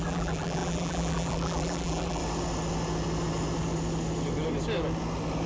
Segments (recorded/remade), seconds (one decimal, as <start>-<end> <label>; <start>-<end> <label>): 0.0-2.2 remade; 2.2-5.5 recorded